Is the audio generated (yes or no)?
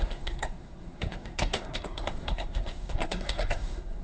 yes